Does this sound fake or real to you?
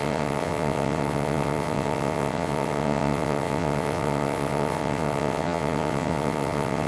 fake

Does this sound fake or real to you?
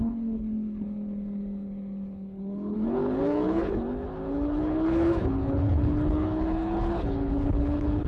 fake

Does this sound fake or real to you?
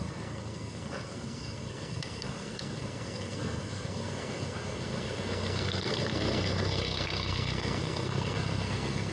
fake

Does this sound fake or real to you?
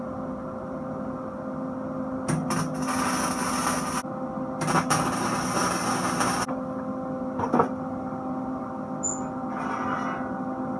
real